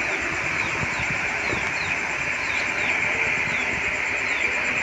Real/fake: real